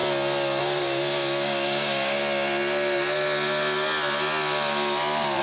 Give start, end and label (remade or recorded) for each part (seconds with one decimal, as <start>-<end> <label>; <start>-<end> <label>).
0.0-0.6 recorded; 0.6-2.2 remade; 2.2-5.4 recorded